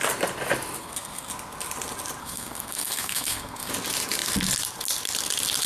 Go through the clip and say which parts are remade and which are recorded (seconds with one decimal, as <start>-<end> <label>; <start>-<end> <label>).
0.0-0.8 recorded; 0.8-1.3 remade; 1.3-2.2 recorded; 2.2-3.7 remade; 3.7-5.7 recorded